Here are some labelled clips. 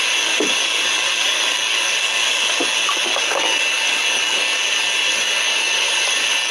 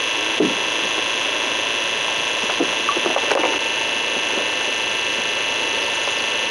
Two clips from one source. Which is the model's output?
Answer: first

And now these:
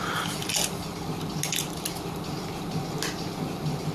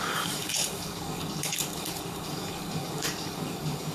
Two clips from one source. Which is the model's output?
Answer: second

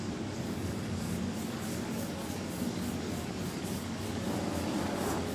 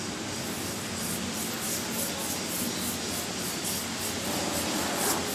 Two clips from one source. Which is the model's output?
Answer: first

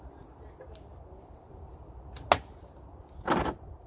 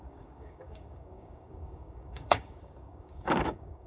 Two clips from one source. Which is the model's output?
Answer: second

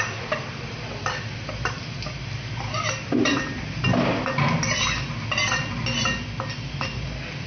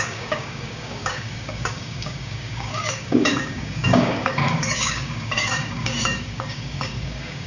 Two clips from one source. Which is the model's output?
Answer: second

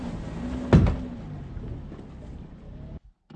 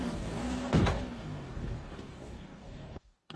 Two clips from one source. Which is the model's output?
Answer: second